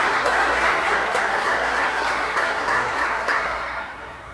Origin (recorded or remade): remade